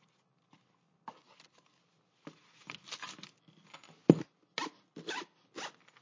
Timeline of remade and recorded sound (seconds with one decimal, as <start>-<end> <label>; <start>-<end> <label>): 0.0-6.0 recorded